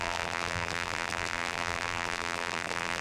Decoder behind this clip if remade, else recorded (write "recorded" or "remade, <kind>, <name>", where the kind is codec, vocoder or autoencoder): remade, vocoder, BigVGAN v2